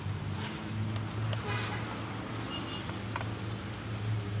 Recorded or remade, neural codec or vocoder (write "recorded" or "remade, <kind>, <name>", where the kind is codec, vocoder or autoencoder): recorded